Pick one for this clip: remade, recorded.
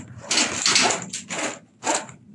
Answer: recorded